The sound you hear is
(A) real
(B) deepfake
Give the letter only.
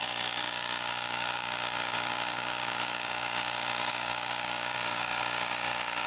B